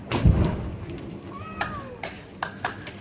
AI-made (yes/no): no